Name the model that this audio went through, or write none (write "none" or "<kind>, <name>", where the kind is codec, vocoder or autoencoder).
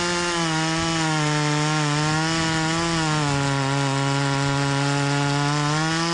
none